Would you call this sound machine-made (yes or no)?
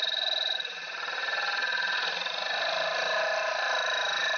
no